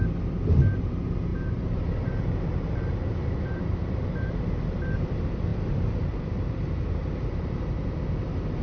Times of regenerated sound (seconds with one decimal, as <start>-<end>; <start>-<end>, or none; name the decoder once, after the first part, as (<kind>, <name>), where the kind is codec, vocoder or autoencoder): 1.3-4.5 (vocoder, BigVGAN v2); 5.5-8.0